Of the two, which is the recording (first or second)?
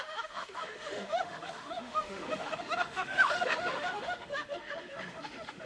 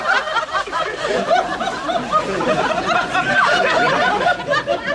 second